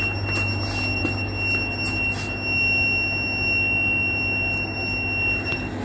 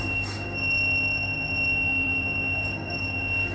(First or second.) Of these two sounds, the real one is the first